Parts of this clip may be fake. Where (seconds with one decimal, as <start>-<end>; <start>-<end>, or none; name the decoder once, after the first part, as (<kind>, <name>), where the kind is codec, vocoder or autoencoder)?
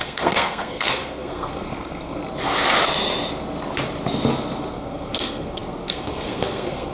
0.0-2.2 (codec, SNAC); 4.7-6.9